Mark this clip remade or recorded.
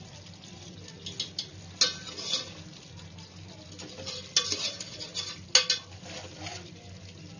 recorded